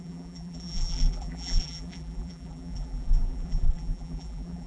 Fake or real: fake